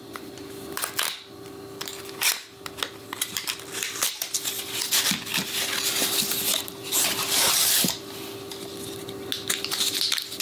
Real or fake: real